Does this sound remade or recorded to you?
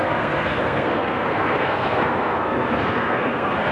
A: remade